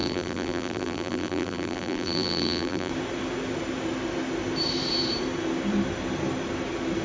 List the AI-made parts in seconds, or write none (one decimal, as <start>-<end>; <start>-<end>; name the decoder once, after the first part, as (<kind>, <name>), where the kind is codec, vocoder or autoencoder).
0.0-2.9 (vocoder, BigVGAN v2)